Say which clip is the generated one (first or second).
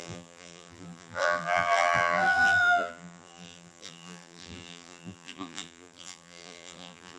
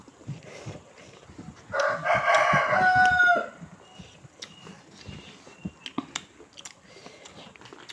first